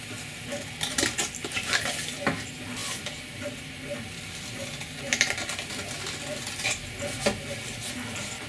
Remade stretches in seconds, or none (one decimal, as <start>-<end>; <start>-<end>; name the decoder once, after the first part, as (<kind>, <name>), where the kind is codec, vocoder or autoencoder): none